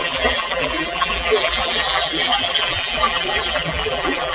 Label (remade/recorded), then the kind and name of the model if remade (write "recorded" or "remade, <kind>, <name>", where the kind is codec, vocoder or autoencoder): remade, vocoder, BigVGAN v2